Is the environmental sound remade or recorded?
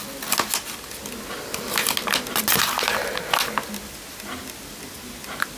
recorded